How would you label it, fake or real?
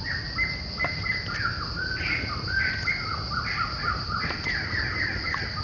real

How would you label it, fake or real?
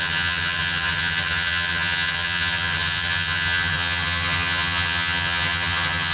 fake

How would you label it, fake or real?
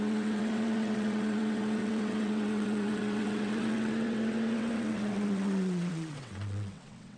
fake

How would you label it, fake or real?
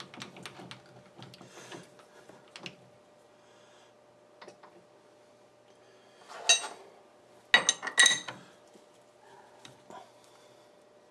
real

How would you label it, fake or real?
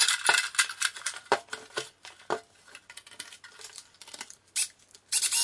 real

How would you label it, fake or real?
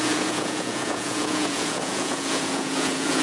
fake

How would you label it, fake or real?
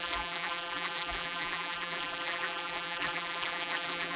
fake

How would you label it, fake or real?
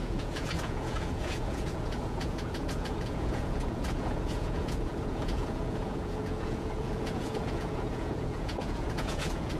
fake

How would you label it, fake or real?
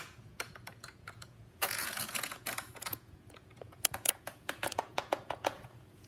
fake